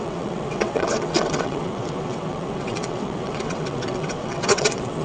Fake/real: fake